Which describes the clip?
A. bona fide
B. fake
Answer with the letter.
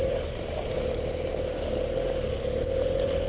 A